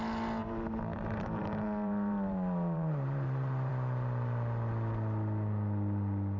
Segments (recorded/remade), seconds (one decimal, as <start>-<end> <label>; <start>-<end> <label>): 0.0-0.4 recorded; 0.4-3.7 remade; 3.7-6.4 recorded